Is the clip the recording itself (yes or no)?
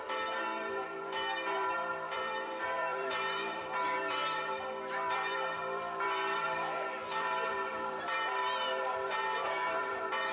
no